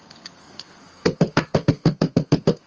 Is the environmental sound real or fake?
fake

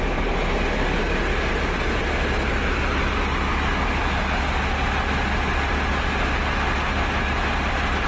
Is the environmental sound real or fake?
real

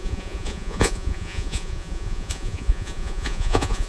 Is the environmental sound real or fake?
fake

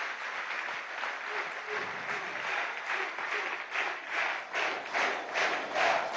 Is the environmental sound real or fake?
real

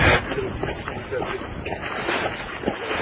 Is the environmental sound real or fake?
real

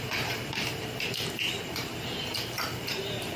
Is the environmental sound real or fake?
fake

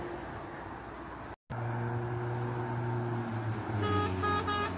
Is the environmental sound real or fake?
real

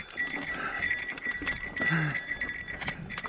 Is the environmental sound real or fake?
real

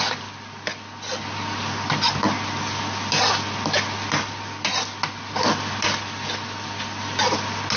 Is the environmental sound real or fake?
real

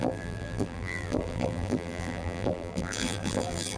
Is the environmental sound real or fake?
fake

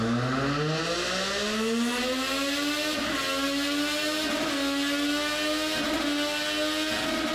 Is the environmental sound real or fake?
real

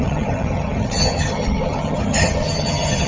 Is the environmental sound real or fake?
fake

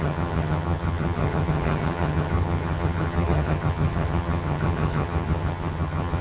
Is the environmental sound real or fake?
fake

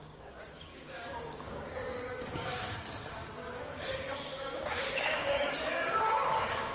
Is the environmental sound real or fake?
fake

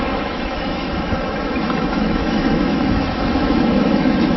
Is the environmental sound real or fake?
fake